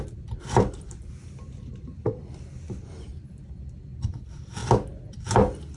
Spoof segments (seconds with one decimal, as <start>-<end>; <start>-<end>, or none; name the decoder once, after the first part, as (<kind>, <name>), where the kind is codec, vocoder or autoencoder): 0.0-2.0 (vocoder, BigVGAN v2); 2.6-4.6; 5.1-5.8